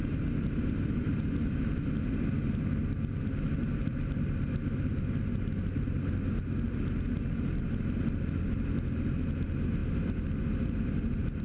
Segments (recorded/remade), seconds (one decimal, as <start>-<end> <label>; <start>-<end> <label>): 0.0-11.4 recorded